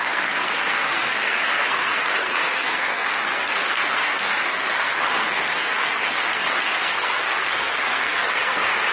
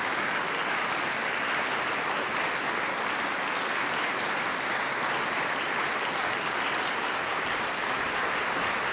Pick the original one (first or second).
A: second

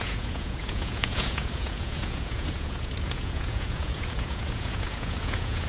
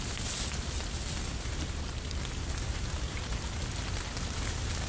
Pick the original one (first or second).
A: second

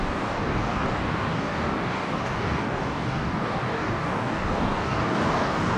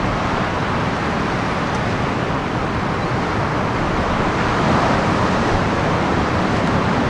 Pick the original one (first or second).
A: second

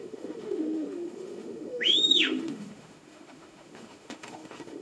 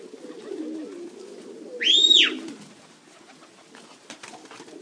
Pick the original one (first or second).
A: second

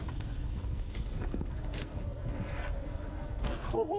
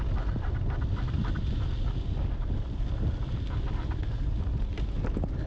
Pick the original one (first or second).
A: second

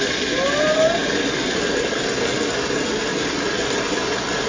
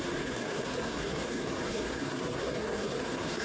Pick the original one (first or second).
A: first